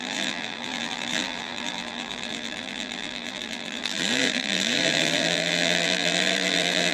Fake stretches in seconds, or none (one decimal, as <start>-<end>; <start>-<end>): 0.0-6.9

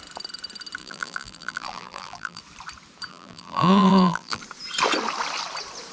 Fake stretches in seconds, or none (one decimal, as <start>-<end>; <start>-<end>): 0.8-2.4; 3.1-4.4

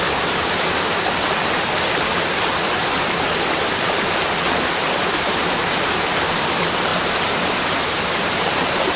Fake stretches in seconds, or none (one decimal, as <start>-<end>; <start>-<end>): 4.8-5.4; 6.9-9.0

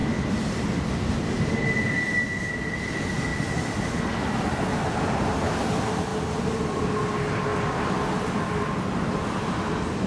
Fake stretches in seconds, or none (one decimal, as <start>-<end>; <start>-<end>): 3.3-4.0

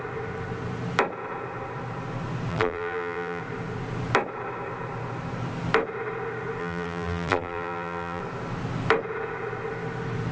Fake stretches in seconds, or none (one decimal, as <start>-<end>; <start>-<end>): 2.5-3.4; 6.6-8.2

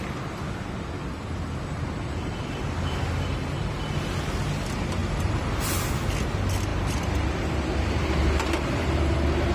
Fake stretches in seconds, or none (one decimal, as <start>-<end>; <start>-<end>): 5.0-5.9; 6.7-7.6

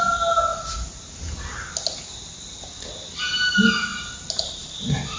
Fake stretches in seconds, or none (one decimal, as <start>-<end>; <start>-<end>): 3.9-4.7

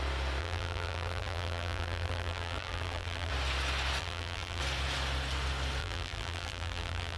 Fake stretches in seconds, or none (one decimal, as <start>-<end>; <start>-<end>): 0.4-3.3; 4.0-4.6; 5.8-7.2